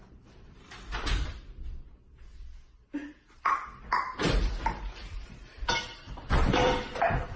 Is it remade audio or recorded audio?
remade